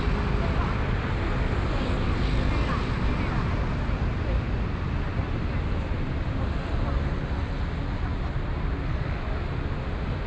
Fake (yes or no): no